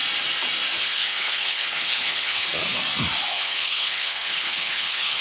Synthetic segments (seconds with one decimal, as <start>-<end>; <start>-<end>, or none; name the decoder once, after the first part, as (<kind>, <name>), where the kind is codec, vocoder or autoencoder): 0.8-2.5 (codec, HILCodec); 3.3-5.2

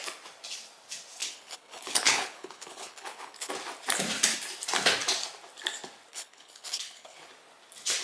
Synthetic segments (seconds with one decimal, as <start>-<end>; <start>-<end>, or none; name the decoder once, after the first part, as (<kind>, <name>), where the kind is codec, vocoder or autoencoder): 1.2-3.5 (codec, HILCodec); 6.1-7.2

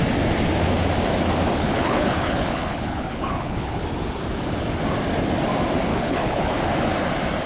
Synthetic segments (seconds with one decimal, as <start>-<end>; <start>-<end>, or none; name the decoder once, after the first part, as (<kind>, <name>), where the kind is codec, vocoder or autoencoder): 1.5-3.8 (codec, HILCodec); 5.9-6.8